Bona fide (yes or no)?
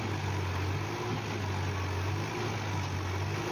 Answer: yes